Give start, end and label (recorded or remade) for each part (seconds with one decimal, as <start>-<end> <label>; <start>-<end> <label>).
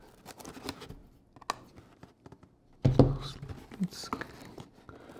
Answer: 0.0-5.2 recorded